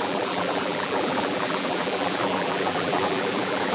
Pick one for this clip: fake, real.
fake